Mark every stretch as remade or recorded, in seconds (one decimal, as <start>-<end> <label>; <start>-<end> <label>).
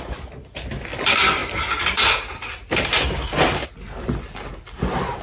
0.0-5.2 recorded